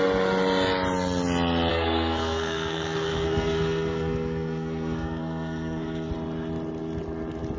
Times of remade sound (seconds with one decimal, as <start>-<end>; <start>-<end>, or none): 1.7-6.1